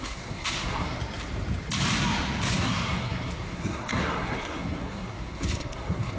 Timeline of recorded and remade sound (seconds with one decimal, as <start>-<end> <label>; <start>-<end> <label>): 0.0-1.0 remade; 1.0-2.4 recorded; 2.4-6.2 remade